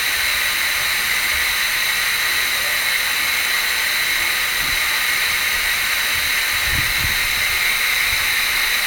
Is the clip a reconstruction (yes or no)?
no